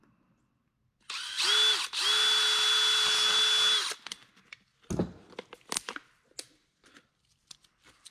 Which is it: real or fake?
real